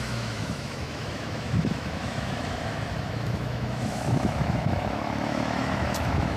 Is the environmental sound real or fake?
fake